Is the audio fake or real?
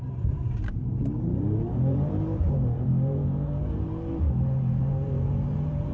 fake